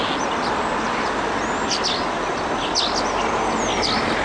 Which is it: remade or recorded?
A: recorded